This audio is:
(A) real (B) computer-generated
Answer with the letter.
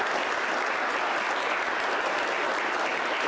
A